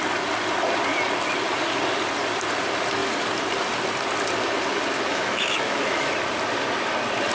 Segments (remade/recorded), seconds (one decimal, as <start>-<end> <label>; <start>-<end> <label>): 0.0-5.1 recorded; 5.1-6.1 remade; 6.1-7.3 recorded